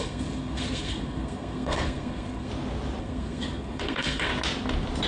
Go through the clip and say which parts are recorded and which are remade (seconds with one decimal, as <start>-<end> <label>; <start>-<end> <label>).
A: 0.0-2.5 remade; 2.5-3.0 recorded; 3.0-4.3 remade; 4.3-5.1 recorded